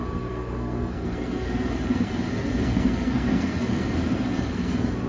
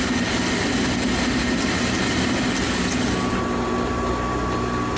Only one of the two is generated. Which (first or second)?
first